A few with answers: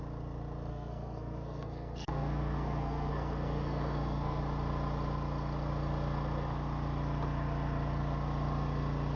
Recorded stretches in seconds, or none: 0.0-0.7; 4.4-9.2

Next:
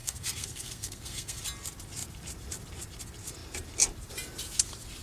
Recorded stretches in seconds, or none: 1.4-5.0

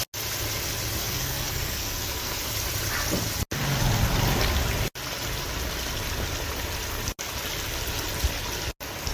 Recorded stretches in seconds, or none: 0.0-1.0; 2.4-9.1

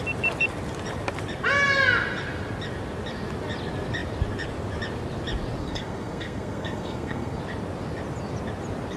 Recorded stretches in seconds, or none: 0.0-5.6; 7.4-9.0